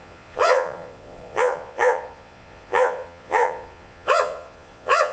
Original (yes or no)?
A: no